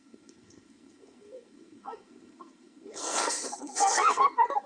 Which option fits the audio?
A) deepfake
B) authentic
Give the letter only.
A